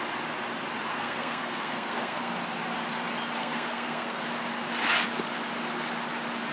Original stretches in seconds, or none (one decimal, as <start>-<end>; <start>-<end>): 0.0-0.9; 2.3-3.4; 4.2-6.5